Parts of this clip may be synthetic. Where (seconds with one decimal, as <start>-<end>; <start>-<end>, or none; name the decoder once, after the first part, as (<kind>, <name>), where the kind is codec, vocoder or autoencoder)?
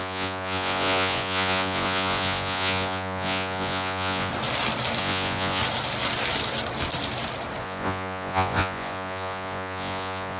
0.0-4.3 (vocoder, Vocos); 5.0-5.6; 7.6-10.4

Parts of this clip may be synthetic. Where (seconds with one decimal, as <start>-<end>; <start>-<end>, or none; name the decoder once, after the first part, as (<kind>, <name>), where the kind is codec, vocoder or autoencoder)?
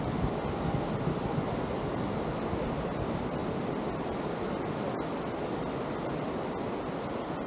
none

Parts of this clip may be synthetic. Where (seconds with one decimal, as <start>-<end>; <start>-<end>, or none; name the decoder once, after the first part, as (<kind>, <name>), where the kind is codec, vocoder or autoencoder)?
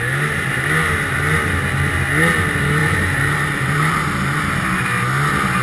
2.8-4.4 (vocoder, BigVGAN v2)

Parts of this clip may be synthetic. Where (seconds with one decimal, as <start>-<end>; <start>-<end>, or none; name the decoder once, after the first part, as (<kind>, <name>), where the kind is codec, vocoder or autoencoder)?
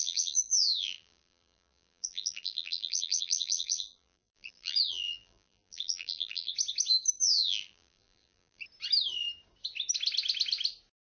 0.0-6.5 (vocoder, BigVGAN v2); 7.2-8.6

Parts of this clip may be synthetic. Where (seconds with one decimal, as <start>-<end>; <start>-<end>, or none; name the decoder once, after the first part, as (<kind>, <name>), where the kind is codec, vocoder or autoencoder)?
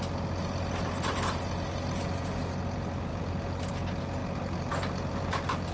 none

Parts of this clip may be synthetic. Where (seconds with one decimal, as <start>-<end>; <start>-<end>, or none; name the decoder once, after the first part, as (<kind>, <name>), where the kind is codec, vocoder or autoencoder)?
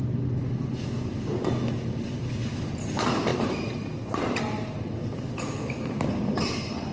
none